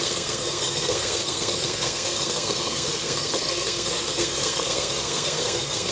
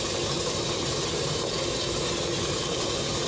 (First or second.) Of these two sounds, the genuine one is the second